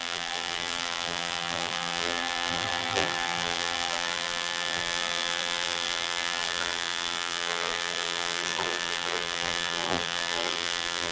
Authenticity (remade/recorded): remade